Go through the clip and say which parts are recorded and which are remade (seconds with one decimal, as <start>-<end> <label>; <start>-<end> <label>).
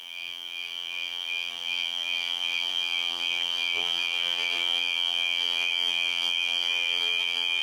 0.0-7.6 remade